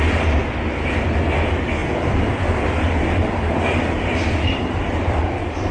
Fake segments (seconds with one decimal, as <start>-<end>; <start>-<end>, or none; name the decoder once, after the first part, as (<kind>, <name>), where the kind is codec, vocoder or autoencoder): 1.8-5.2 (vocoder, BigVGAN v2)